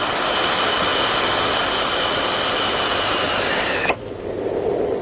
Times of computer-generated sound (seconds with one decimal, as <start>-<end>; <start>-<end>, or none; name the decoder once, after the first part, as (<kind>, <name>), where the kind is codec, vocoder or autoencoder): none